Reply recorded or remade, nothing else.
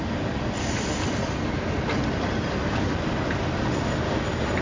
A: recorded